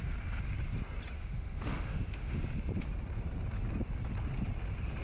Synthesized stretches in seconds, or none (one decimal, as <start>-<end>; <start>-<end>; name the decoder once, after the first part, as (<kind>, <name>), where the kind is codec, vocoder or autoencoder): 1.2-2.4 (autoencoder, DAC-VAE)